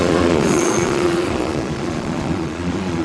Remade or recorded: remade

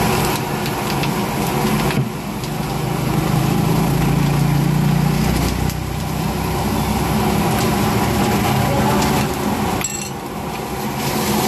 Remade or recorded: recorded